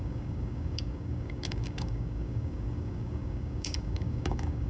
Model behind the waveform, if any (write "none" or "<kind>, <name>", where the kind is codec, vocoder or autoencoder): codec, DAC